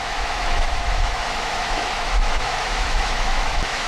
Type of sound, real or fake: fake